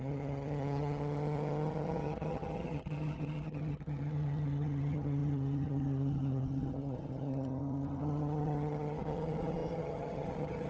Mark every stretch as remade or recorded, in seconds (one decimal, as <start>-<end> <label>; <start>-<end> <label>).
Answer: 0.0-10.7 remade